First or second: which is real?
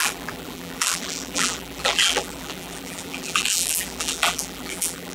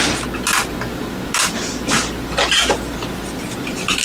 second